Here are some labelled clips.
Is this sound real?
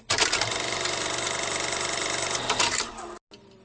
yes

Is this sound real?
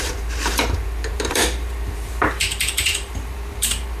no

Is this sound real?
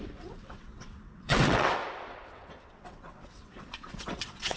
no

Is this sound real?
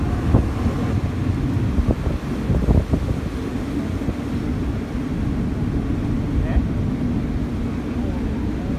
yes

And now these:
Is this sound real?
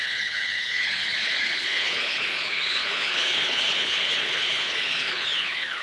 no